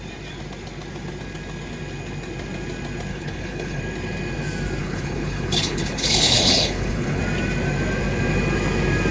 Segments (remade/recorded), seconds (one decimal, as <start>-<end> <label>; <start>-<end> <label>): 0.0-3.1 recorded; 3.1-3.8 remade; 3.8-4.8 recorded; 4.8-7.2 remade; 7.2-9.1 recorded